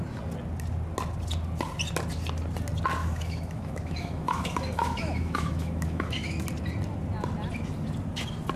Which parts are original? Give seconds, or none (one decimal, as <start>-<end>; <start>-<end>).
0.0-3.0; 6.4-8.6